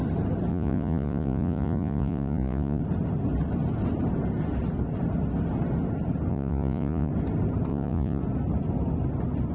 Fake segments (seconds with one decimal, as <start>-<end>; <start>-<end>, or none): 0.5-2.8; 6.3-7.1; 7.7-8.2